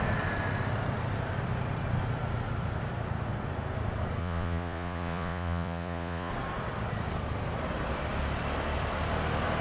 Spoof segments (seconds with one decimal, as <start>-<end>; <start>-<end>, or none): 4.2-6.3